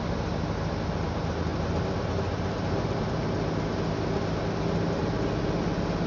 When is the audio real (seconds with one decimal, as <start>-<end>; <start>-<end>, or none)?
0.0-6.1